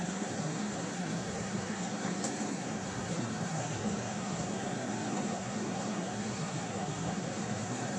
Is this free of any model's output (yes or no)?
no